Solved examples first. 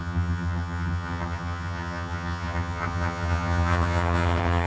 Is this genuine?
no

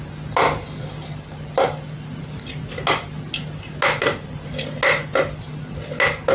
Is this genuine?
yes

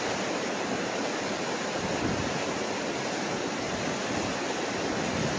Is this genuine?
yes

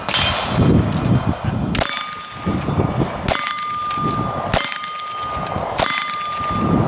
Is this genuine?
yes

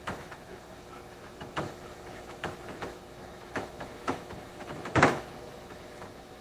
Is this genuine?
no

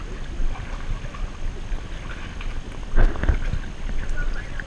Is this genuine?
yes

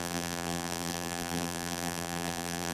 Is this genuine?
no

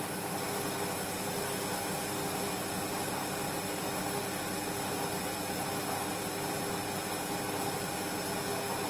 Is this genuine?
yes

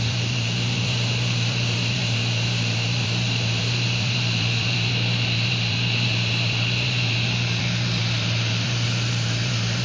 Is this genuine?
no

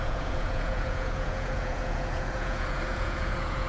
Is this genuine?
no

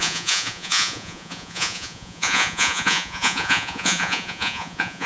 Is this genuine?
no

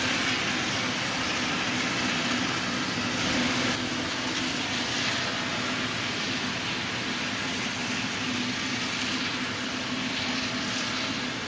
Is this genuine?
yes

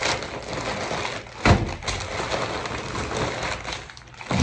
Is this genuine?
yes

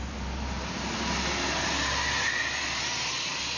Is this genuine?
yes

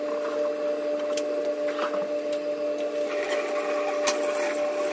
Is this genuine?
yes